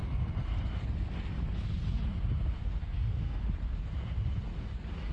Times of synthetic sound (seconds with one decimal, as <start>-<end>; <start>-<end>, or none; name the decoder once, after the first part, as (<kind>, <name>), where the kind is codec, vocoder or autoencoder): 2.8-3.4 (codec, SNAC)